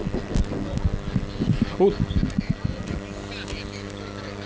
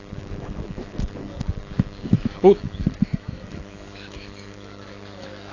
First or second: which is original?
first